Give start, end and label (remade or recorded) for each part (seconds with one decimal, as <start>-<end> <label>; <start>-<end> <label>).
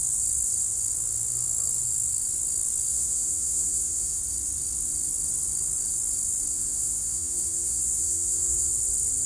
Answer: 0.0-2.9 recorded; 2.9-4.2 remade; 4.2-6.5 recorded; 6.5-8.7 remade; 8.7-9.3 recorded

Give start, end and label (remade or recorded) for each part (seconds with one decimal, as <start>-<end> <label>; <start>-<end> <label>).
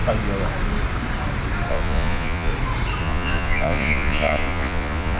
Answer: 0.0-1.7 recorded; 1.7-2.5 remade; 2.5-3.0 recorded; 3.0-5.2 remade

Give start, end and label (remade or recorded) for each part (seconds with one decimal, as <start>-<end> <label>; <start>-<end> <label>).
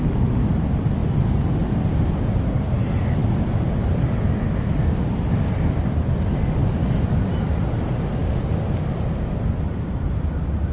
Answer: 0.0-10.7 recorded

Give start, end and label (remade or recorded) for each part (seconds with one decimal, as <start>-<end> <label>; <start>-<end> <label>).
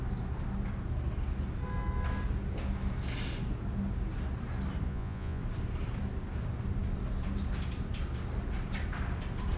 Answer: 0.0-4.9 recorded; 4.9-5.4 remade; 5.4-9.6 recorded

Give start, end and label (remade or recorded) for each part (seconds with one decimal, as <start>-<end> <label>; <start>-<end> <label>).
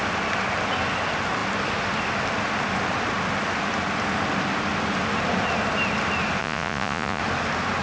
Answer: 0.0-6.4 recorded; 6.4-7.2 remade; 7.2-7.8 recorded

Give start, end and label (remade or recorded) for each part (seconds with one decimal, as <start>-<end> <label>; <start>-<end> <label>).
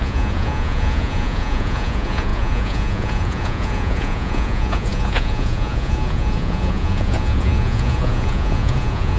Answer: 0.0-9.2 remade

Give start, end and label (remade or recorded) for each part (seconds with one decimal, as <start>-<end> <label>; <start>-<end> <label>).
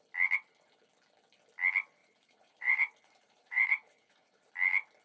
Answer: 0.0-2.0 recorded; 2.0-4.5 remade; 4.5-5.0 recorded